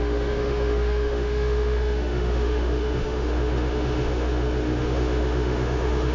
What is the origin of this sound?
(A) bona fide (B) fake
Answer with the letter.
B